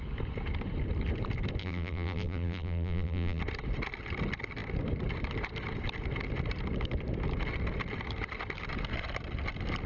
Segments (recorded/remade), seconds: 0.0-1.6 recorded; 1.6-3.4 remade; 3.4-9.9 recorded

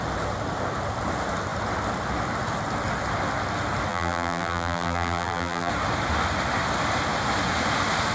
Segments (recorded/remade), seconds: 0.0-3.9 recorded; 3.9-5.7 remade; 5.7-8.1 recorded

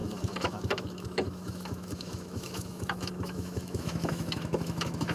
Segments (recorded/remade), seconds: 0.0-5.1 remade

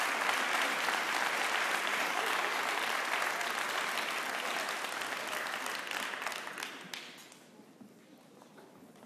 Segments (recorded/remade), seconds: 0.0-1.9 recorded; 1.9-2.6 remade; 2.6-9.1 recorded